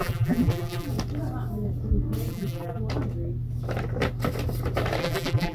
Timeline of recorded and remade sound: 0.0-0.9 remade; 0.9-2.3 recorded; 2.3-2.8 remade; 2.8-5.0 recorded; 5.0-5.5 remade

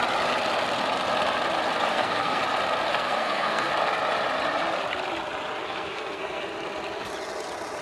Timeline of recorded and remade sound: 0.0-1.9 recorded; 1.9-2.4 remade; 2.4-2.9 recorded; 2.9-3.7 remade; 3.7-5.6 recorded; 5.6-6.4 remade; 6.4-7.8 recorded